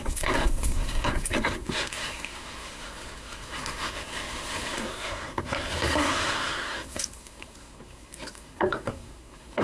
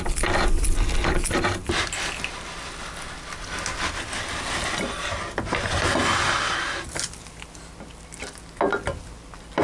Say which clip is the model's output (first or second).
first